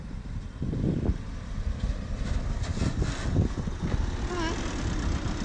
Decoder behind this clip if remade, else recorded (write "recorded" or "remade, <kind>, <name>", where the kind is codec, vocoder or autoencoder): recorded